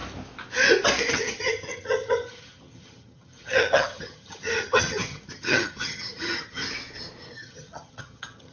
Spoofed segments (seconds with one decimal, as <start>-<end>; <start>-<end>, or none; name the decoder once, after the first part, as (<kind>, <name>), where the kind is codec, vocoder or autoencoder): 1.1-6.6 (vocoder, HiFi-GAN); 7.2-8.5